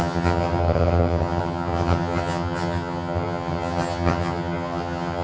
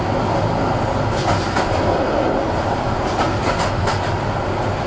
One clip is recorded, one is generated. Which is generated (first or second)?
first